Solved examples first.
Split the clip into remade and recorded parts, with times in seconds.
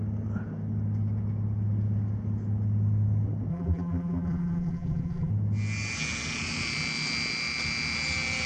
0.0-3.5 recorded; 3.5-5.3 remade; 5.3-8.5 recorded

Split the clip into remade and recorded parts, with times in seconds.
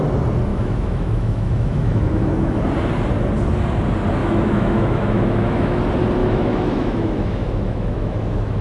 0.0-0.5 recorded; 0.5-2.6 remade; 2.6-4.2 recorded; 4.2-5.8 remade; 5.8-6.2 recorded; 6.2-8.6 remade